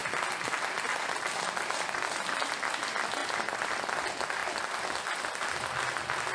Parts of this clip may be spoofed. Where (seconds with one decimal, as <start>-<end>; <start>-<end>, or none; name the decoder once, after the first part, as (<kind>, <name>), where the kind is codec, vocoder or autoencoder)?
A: 3.2-3.8 (vocoder, BigVGAN v2)